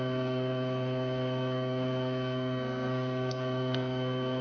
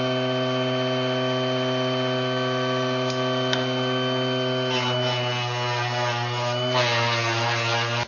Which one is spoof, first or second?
first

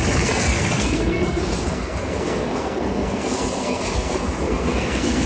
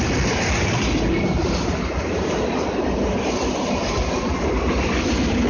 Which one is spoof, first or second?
first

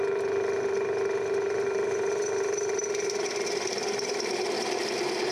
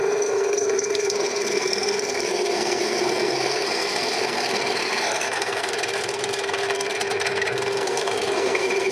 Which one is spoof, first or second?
second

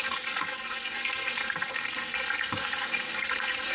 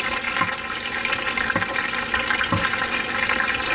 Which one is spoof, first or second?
first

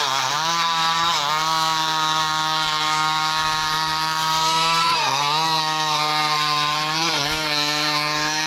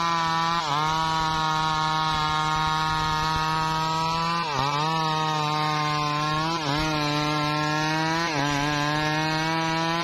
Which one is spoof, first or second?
first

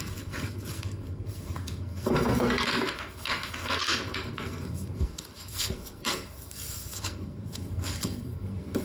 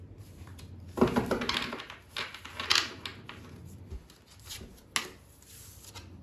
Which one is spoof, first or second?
first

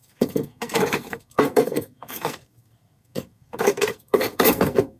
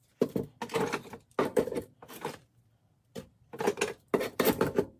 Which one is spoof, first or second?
first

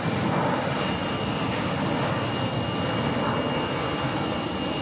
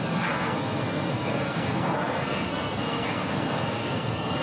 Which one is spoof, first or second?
second